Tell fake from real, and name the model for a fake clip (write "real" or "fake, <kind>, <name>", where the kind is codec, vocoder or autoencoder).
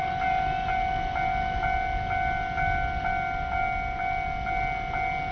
real